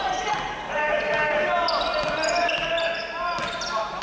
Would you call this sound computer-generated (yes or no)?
no